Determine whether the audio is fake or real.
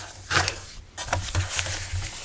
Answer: real